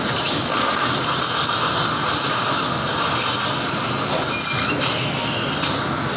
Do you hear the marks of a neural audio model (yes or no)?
no